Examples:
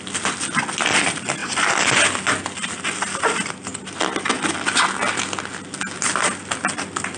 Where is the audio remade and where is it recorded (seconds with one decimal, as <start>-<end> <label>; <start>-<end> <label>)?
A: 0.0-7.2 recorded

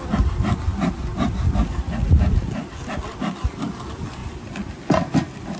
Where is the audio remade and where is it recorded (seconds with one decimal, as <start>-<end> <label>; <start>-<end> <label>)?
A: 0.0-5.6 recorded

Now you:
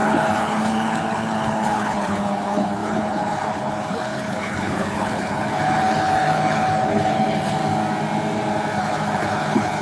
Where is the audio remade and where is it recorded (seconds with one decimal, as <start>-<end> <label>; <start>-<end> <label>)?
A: 0.0-7.6 remade; 7.6-8.8 recorded; 8.8-9.8 remade

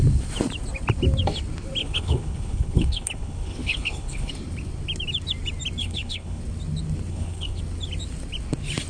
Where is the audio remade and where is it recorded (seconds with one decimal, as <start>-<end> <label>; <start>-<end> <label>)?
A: 0.0-1.8 recorded; 1.8-4.3 remade; 4.3-5.8 recorded; 5.8-6.4 remade; 6.4-7.1 recorded; 7.1-7.6 remade; 7.6-8.9 recorded

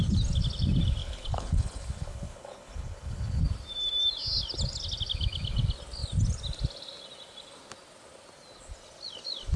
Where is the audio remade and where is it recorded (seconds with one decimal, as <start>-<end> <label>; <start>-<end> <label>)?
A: 0.0-1.0 recorded; 1.0-3.4 remade; 3.4-9.6 recorded